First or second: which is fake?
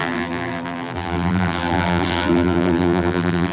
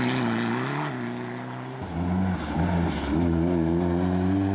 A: first